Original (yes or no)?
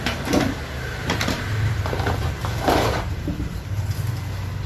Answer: no